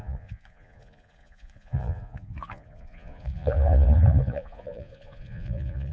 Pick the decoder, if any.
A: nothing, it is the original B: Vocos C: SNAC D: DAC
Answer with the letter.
B